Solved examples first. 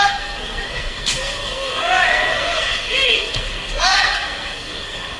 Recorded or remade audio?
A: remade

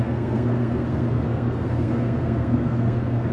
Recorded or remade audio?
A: remade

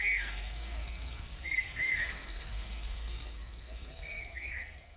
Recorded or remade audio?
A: remade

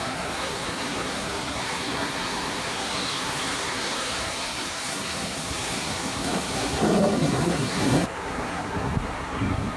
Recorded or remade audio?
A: remade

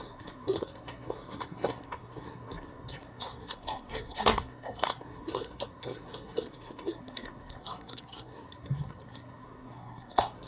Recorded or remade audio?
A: remade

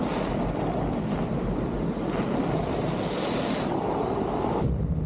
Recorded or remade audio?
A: recorded